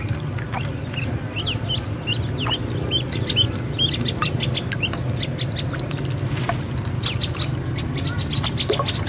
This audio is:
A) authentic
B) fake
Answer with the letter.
A